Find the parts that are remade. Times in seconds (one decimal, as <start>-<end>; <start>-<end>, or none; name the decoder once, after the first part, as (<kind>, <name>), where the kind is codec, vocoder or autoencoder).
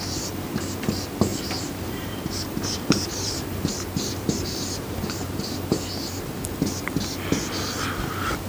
1.3-5.8 (vocoder, BigVGAN v2)